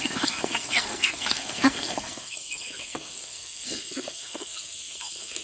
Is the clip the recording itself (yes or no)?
no